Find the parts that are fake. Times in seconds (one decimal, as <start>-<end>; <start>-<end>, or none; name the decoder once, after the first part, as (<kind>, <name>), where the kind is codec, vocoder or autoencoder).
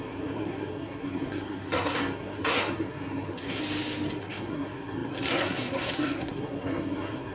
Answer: 0.0-3.6 (codec, SNAC); 4.2-7.3